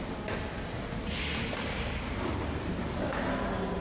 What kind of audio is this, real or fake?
real